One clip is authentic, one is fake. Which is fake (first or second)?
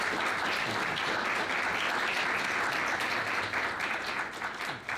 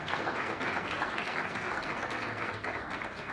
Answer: second